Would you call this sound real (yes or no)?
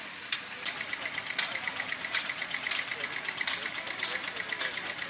yes